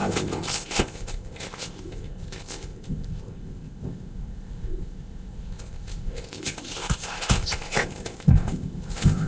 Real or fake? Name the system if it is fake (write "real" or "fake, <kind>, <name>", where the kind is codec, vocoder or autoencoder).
fake, codec, ZipCodec